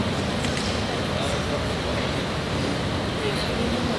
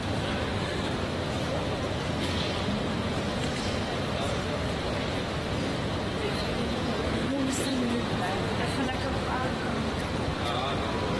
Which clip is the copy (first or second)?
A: second